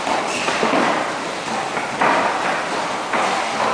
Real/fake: real